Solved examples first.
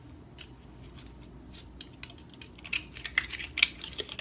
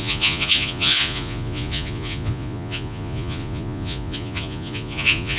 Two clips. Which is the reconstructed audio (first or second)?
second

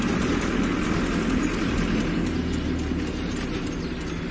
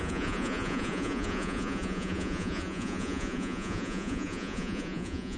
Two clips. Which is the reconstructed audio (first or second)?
second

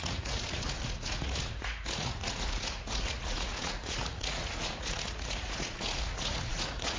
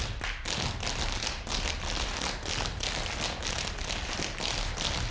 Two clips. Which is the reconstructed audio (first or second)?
first